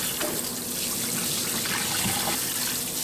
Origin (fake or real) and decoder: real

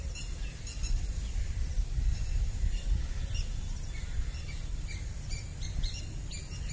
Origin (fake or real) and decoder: real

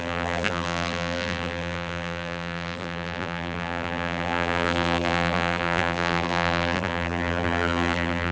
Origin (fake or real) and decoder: fake, vocoder, BigVGAN v2